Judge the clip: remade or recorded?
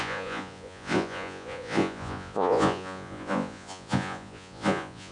remade